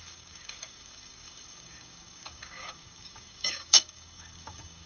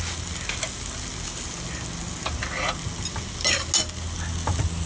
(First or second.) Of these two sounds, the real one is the second